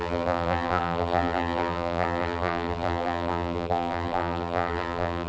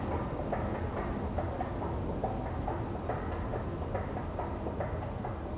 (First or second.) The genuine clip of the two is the second